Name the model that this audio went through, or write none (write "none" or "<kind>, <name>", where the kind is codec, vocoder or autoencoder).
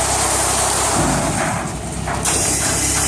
none